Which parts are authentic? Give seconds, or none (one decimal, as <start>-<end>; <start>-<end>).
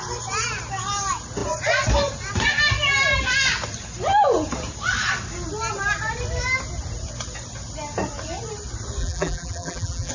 0.0-9.0